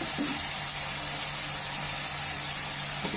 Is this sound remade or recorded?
recorded